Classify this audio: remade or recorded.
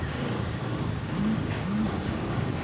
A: remade